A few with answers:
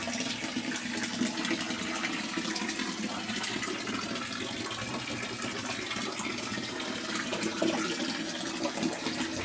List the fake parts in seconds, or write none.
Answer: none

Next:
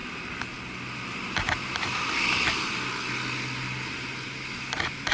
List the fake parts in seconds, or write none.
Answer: none

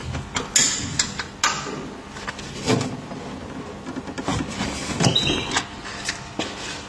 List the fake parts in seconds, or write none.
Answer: none

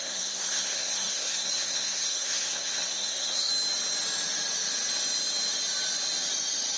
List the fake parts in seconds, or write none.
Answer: 0.0-3.5 (codec, SNAC)

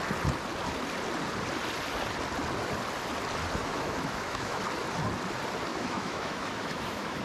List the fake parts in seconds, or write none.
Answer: 3.6-4.6 (autoencoder, DAC-VAE); 5.7-7.2

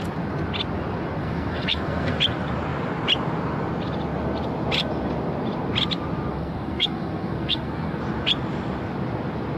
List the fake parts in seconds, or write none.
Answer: 1.2-2.2 (codec, SNAC); 6.3-8.0

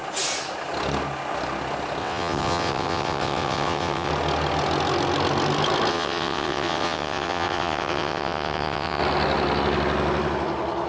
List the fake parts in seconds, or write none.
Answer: 2.0-4.1 (vocoder, WaveNeXt); 5.9-9.0